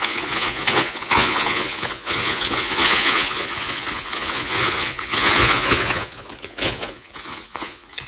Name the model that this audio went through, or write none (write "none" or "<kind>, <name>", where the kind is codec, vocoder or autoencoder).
vocoder, Vocos